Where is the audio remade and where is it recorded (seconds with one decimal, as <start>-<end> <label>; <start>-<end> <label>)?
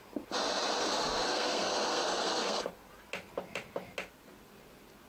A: 0.0-0.8 recorded; 0.8-2.7 remade; 2.7-5.1 recorded